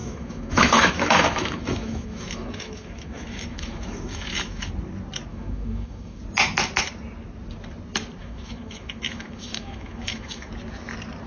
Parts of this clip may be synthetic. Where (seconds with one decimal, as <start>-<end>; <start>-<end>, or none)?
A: 0.0-4.7; 5.3-6.2; 8.2-10.5